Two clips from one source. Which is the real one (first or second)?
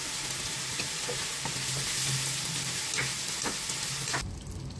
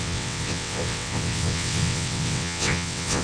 first